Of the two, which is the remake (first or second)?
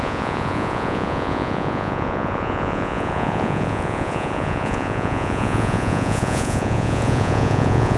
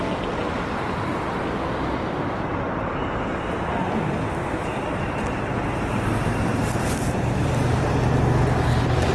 first